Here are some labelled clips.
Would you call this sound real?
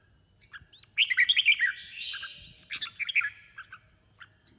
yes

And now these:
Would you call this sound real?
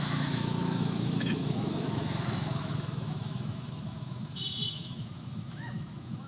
no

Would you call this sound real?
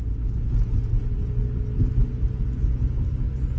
yes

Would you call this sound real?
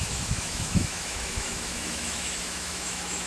no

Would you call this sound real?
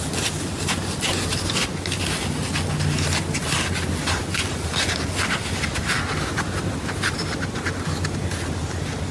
yes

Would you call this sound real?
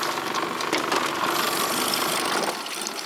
yes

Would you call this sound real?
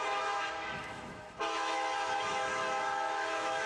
no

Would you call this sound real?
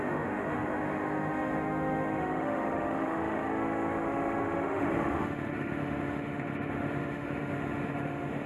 no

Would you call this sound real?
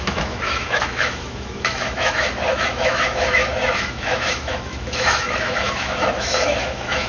no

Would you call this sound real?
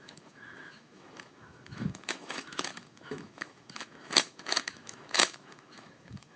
no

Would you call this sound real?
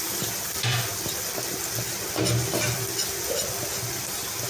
yes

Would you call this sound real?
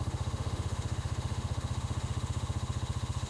no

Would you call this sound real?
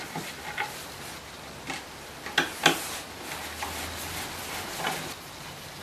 yes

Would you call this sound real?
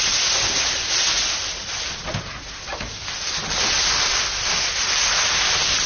yes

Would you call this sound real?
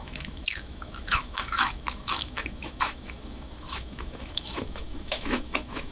no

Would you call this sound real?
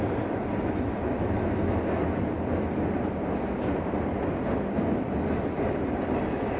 yes